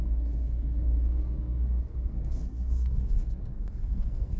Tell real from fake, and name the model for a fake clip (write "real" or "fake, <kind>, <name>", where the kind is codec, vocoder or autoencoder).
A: fake, codec, SNAC